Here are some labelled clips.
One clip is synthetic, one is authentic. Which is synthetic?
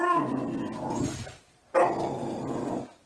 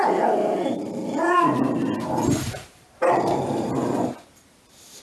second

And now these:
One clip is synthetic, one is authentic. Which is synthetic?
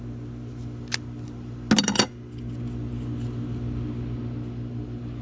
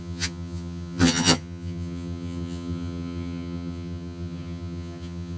second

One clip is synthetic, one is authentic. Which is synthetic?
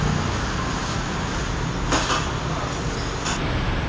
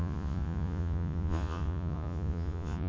second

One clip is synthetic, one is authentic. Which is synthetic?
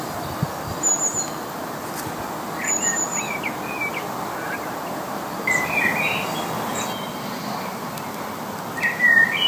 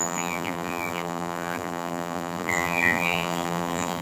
second